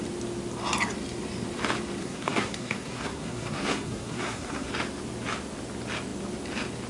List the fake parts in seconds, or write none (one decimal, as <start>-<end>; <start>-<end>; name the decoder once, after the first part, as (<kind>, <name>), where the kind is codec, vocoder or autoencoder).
2.0-4.7 (codec, SNAC)